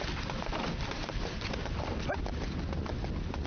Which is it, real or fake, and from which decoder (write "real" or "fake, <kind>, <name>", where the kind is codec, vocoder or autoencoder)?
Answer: real